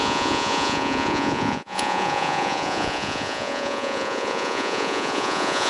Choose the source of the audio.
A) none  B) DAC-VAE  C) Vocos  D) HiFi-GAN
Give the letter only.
C